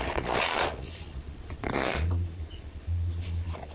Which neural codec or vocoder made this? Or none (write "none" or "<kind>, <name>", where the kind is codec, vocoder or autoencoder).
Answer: vocoder, Vocos